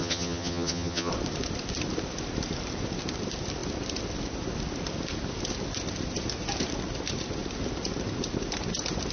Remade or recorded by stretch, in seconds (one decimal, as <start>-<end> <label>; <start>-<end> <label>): 0.0-1.1 remade; 1.1-9.1 recorded

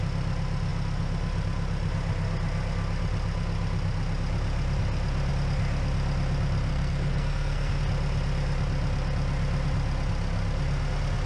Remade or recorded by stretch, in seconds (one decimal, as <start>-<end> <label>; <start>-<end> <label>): 0.0-6.7 recorded; 6.7-7.8 remade; 7.8-11.3 recorded

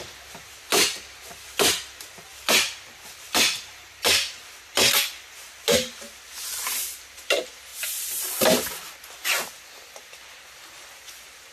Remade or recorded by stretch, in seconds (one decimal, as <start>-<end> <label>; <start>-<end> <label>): 0.0-11.5 recorded

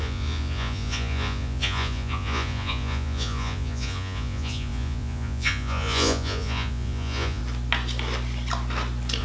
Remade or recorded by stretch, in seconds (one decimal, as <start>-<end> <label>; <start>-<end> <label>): 0.0-7.4 remade; 7.4-9.2 recorded

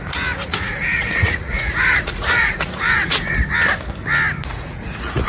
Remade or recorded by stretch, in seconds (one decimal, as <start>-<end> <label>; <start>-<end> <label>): 0.0-0.4 recorded; 0.4-3.3 remade; 3.3-4.5 recorded; 4.5-5.3 remade

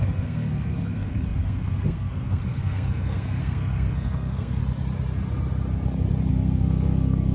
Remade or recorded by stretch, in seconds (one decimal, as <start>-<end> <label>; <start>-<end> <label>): 0.0-4.6 remade; 4.6-6.3 recorded; 6.3-7.3 remade

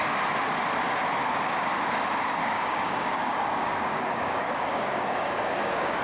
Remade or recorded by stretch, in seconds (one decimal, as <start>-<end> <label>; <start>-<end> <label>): 0.0-2.4 recorded; 2.4-6.0 remade